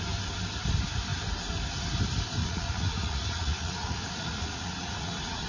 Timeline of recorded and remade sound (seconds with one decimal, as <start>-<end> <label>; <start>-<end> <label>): 0.0-2.4 recorded; 2.4-5.5 remade